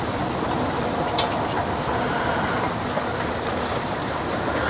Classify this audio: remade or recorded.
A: recorded